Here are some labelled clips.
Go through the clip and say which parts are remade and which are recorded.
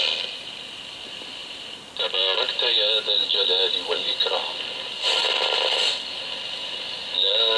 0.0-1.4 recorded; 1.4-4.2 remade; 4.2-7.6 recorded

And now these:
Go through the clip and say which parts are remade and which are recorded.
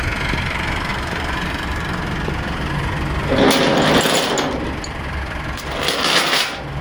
0.0-0.9 recorded; 0.9-2.7 remade; 2.7-6.8 recorded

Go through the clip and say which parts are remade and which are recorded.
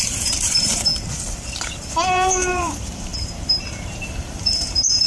0.0-0.9 remade; 0.9-1.9 recorded; 1.9-5.1 remade